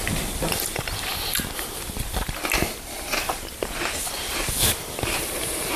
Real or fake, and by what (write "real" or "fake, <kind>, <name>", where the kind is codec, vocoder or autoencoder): fake, vocoder, BigVGAN v2